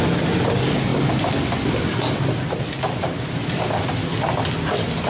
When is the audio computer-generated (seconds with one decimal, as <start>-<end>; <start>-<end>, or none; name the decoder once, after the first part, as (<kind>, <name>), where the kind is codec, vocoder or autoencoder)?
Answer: none